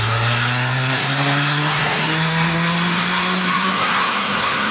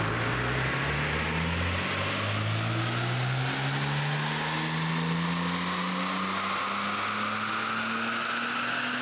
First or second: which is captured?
second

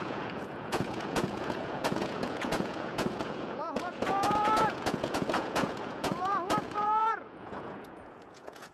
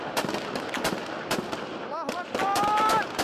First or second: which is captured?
second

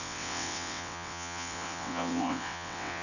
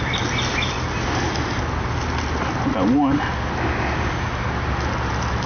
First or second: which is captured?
second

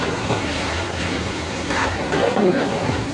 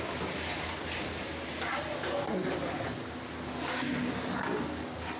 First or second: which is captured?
second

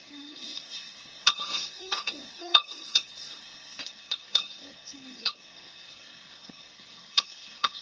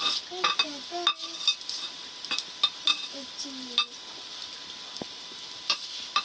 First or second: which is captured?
second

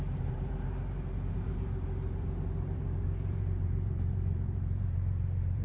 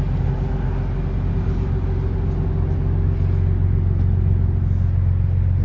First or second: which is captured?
second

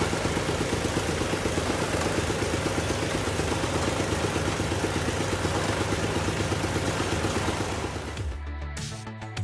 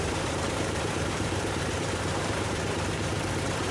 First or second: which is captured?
first